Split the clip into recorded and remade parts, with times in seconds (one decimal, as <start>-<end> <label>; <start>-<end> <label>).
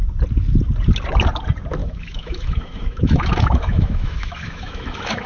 0.0-1.8 recorded; 1.8-5.3 remade